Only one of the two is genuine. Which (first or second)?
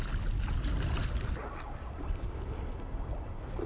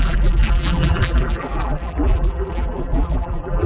first